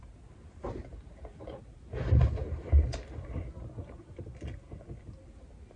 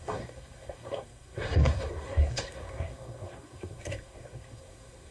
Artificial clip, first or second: second